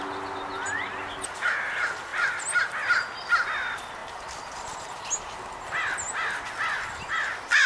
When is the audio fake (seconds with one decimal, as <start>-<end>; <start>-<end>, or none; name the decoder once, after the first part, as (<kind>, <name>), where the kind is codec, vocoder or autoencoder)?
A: 2.1-2.7 (vocoder, BigVGAN v2)